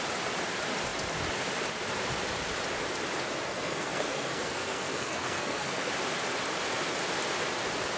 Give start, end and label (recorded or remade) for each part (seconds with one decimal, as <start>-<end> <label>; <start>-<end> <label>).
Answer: 0.0-3.5 recorded; 3.5-5.9 remade; 5.9-8.0 recorded